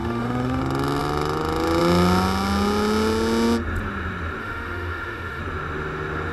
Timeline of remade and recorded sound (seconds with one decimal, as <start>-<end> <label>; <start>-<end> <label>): 0.0-0.6 remade; 0.6-4.4 recorded; 4.4-5.4 remade; 5.4-6.3 recorded